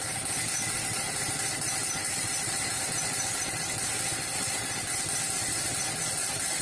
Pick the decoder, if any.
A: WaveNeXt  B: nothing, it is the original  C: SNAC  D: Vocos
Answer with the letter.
B